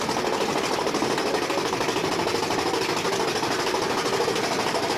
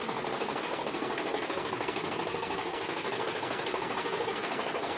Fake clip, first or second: second